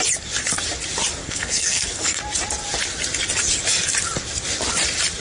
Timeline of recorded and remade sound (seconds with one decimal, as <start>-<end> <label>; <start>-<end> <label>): 0.0-1.2 recorded; 1.2-2.2 remade; 2.2-5.2 recorded

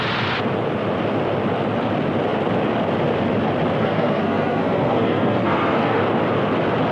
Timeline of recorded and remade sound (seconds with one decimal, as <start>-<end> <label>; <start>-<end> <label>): 0.0-3.8 recorded; 3.8-6.0 remade; 6.0-6.9 recorded

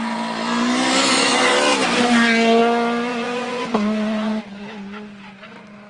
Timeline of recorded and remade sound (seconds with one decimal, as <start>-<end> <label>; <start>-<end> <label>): 0.0-3.1 recorded; 3.1-4.4 remade; 4.4-5.9 recorded

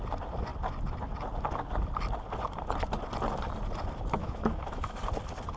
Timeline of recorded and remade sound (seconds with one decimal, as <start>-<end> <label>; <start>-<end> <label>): 0.0-4.2 recorded; 4.2-5.0 remade; 5.0-5.6 recorded